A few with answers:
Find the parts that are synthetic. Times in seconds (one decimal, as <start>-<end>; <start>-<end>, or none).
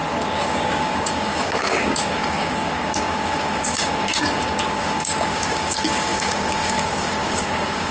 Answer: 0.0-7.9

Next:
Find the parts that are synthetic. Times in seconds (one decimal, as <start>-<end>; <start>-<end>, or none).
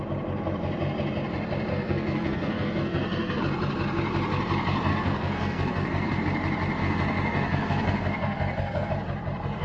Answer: 1.7-3.4; 4.9-6.2; 6.8-8.9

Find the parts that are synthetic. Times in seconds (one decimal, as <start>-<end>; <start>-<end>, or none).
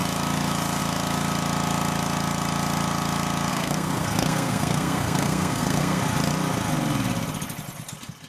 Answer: 3.5-6.0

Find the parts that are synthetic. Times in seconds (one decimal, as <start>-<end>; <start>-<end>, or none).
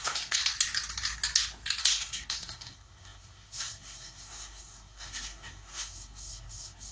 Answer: 0.0-0.4; 1.8-6.9